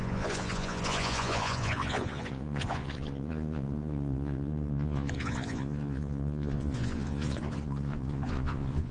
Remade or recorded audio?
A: remade